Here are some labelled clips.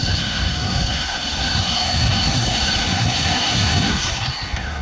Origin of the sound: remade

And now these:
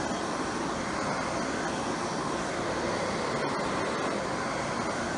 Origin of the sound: recorded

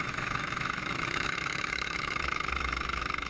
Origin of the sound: remade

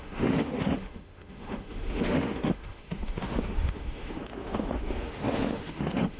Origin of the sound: remade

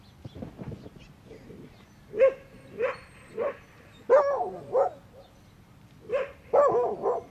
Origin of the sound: recorded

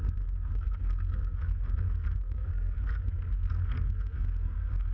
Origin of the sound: remade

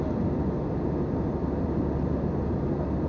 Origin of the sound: recorded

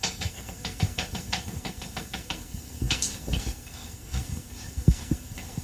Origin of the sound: remade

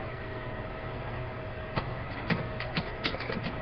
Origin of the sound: remade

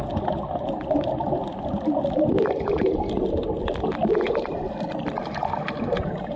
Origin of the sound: recorded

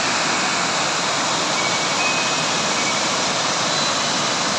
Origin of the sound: recorded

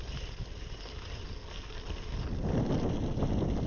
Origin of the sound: recorded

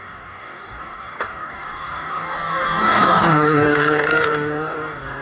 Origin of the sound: remade